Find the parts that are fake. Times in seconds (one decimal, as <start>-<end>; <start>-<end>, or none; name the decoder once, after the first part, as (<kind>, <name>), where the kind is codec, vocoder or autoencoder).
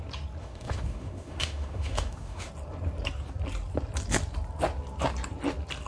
0.4-2.5 (autoencoder, DAC-VAE)